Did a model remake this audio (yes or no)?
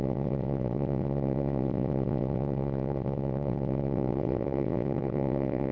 yes